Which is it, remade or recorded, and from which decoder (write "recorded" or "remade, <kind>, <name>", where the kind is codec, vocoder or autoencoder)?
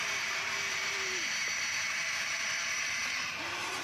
remade, vocoder, BigVGAN v2